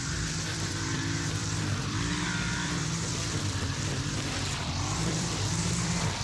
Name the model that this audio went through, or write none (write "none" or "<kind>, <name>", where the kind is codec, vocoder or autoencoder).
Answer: vocoder, BigVGAN v2